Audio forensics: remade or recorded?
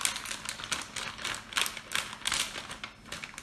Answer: recorded